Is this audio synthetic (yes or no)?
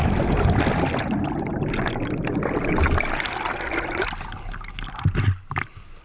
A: no